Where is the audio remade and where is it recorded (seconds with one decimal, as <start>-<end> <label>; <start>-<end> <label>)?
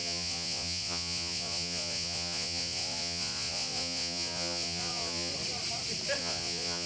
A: 0.0-5.3 remade; 5.3-6.2 recorded; 6.2-6.9 remade